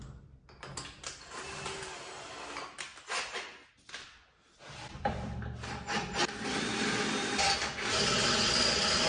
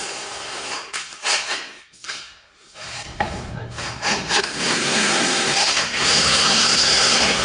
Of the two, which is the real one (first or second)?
first